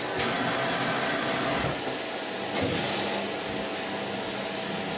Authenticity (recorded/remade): recorded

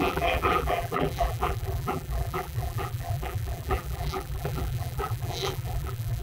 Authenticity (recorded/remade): remade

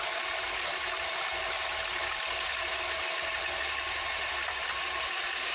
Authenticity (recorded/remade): recorded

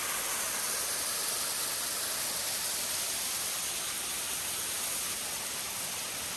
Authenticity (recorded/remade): recorded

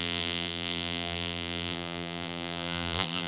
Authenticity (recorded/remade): remade